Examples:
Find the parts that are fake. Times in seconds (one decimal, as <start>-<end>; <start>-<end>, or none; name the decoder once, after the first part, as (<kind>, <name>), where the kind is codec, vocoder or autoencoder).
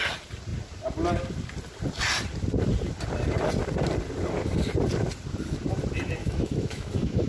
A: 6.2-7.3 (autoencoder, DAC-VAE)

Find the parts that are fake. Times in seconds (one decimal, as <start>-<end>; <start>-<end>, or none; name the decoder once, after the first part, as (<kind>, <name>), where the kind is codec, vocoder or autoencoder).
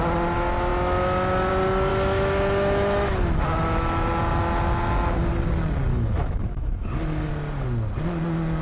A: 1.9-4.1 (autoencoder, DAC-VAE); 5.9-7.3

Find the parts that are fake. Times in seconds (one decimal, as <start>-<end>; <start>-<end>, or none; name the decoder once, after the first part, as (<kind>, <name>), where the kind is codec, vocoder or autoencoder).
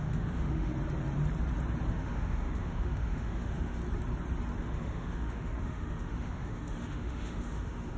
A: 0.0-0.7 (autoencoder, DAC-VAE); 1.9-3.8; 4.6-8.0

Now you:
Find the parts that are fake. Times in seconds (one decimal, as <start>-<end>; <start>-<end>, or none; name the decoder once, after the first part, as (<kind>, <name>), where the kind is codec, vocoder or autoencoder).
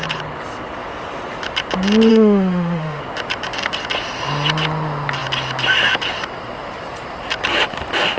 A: 2.1-3.0 (autoencoder, DAC-VAE)